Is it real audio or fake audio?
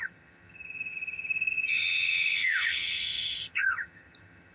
fake